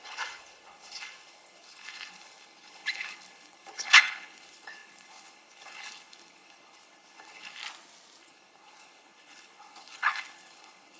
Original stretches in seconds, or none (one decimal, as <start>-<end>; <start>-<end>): 7.6-8.2